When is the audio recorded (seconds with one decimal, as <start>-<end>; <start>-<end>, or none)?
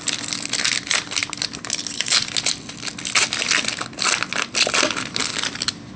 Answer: 0.0-6.0